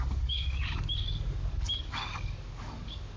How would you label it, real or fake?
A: fake